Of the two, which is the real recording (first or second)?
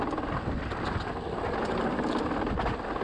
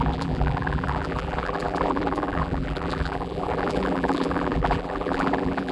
first